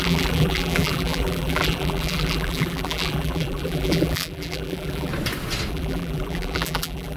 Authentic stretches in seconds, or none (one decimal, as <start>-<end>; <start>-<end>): 5.1-5.7